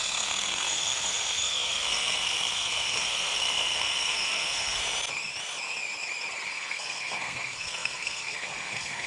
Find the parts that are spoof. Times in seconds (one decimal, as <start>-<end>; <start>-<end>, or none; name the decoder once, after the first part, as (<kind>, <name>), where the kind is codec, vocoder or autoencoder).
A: 0.0-4.8 (codec, SNAC); 6.5-9.1